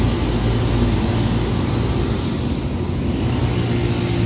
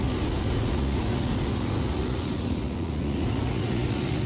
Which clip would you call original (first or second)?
first